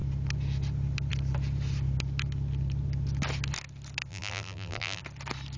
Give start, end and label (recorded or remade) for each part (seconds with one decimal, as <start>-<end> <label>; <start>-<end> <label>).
0.0-4.1 recorded; 4.1-5.0 remade; 5.0-5.6 recorded

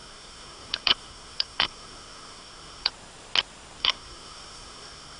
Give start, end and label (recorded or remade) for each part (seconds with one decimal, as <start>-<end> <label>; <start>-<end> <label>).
0.0-2.9 remade; 2.9-3.8 recorded; 3.8-5.2 remade

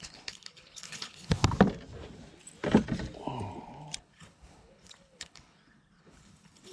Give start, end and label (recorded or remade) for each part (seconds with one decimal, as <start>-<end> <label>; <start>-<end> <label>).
0.0-1.4 remade; 1.4-4.0 recorded; 4.0-6.7 remade

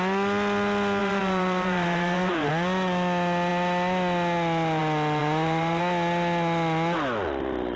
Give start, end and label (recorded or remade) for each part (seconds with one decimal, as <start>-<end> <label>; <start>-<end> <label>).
0.0-1.0 recorded; 1.0-2.5 remade; 2.5-5.2 recorded; 5.2-5.8 remade; 5.8-7.8 recorded

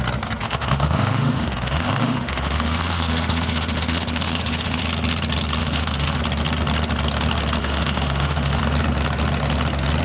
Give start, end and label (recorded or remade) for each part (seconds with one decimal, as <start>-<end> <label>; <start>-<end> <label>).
0.0-0.4 recorded; 0.4-4.8 remade; 4.8-5.6 recorded; 5.6-6.2 remade; 6.2-7.6 recorded; 7.6-8.6 remade; 8.6-10.0 recorded

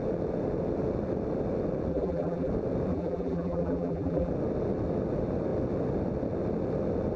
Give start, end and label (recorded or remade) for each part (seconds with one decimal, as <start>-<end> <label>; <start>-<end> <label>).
0.0-1.9 recorded; 1.9-2.5 remade; 2.5-2.9 recorded; 2.9-4.3 remade; 4.3-7.2 recorded

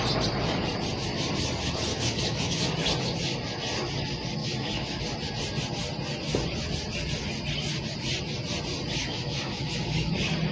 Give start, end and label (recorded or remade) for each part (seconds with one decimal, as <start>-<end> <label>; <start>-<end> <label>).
0.0-1.9 recorded; 1.9-2.6 remade; 2.6-4.4 recorded; 4.4-5.0 remade; 5.0-9.0 recorded; 9.0-10.1 remade; 10.1-10.5 recorded